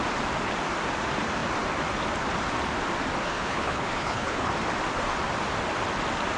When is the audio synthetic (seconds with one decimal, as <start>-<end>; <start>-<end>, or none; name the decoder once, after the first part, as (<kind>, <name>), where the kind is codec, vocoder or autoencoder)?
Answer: 3.2-4.5 (codec, HILCodec)